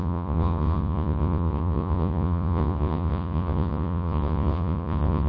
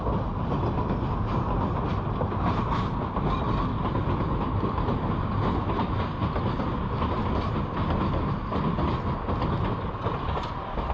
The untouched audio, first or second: second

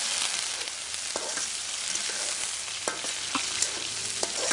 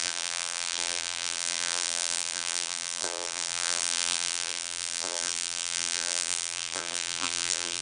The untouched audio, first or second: first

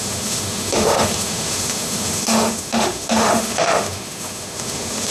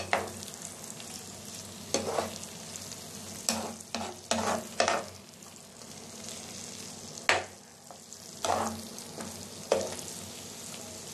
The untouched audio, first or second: second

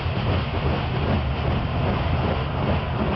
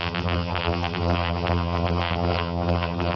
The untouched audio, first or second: first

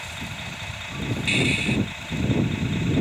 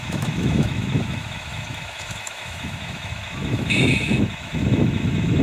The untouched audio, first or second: first